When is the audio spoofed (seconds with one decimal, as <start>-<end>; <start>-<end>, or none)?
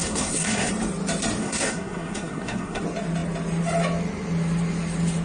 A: 0.0-0.7; 1.4-2.8